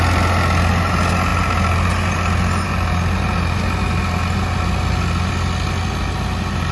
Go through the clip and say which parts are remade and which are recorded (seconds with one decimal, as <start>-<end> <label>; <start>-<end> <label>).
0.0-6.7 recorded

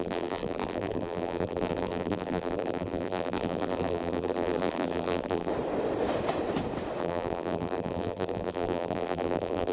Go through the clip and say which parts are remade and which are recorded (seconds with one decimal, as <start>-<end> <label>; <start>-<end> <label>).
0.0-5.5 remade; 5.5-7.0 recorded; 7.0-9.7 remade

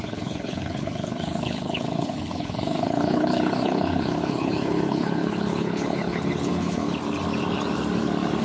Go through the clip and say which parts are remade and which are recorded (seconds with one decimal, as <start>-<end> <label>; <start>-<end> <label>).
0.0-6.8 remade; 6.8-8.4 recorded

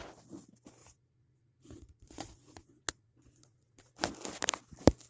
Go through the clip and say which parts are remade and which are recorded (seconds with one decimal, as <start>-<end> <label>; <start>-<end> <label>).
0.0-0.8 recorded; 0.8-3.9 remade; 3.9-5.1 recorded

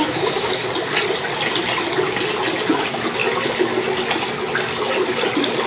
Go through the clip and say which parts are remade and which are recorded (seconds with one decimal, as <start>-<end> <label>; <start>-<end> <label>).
0.0-0.6 remade; 0.6-2.8 recorded; 2.8-3.2 remade; 3.2-5.7 recorded

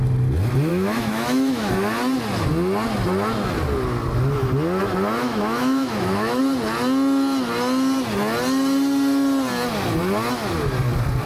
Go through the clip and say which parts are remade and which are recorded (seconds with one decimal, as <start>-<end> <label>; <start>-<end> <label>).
0.0-0.7 recorded; 0.7-1.7 remade; 1.7-5.2 recorded; 5.2-6.4 remade; 6.4-11.3 recorded

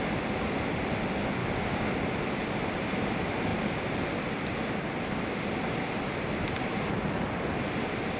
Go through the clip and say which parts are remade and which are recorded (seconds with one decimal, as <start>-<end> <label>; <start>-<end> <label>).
0.0-1.4 recorded; 1.4-1.9 remade; 1.9-8.2 recorded